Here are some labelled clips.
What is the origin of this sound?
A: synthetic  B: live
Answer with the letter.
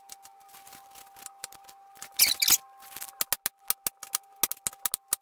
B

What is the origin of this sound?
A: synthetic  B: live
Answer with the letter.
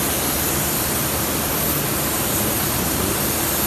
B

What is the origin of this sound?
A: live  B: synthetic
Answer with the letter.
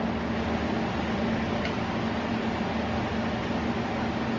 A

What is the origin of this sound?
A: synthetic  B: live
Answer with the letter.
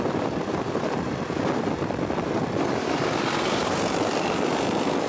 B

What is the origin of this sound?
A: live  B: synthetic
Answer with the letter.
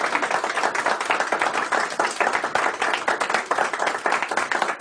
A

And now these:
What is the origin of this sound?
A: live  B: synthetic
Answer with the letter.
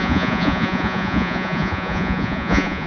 B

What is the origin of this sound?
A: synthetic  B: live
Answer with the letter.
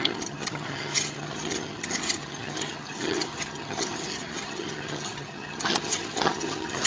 A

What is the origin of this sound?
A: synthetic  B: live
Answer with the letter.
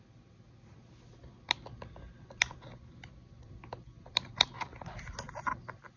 B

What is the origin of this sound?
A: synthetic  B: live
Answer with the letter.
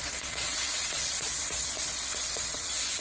A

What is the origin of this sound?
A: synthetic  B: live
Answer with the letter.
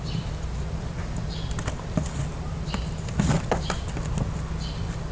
B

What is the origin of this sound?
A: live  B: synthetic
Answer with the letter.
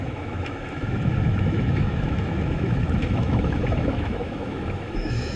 B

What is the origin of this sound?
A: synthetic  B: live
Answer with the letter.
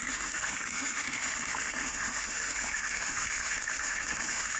A